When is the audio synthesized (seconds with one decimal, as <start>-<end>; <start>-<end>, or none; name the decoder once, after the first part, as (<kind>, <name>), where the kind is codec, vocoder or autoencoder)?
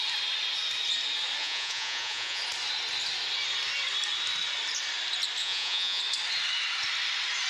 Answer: 1.4-2.4 (vocoder, Vocos); 5.4-6.0